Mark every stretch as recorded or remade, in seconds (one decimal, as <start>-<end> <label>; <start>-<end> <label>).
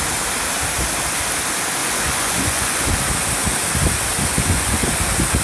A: 0.0-1.8 recorded; 1.8-2.9 remade; 2.9-4.3 recorded; 4.3-4.9 remade; 4.9-5.4 recorded